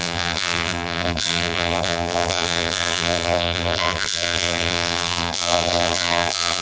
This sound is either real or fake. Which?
fake